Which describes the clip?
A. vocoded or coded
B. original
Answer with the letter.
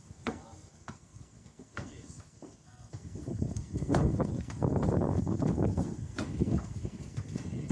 A